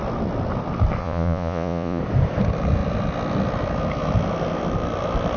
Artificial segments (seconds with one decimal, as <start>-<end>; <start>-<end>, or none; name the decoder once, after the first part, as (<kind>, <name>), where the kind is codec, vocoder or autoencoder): 1.0-2.0 (vocoder, Vocos)